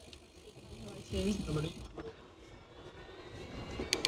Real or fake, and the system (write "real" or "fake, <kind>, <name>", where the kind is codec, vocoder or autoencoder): real